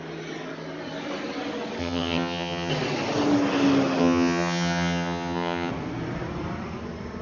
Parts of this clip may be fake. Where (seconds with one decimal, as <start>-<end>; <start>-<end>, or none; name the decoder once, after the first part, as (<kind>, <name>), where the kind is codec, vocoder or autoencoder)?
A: 1.8-2.7 (vocoder, HiFi-GAN); 4.0-5.7

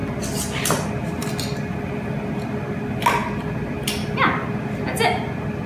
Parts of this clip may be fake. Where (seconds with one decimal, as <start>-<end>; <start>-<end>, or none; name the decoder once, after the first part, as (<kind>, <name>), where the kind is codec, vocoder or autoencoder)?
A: none